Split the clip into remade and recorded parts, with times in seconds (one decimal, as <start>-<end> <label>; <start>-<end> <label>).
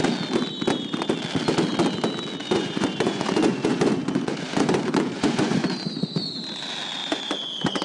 0.0-2.4 recorded; 2.4-5.9 remade; 5.9-7.0 recorded; 7.0-7.8 remade